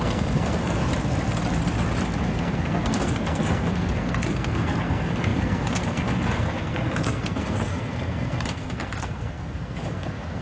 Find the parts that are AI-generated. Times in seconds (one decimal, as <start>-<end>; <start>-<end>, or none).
0.0-0.8; 2.4-10.4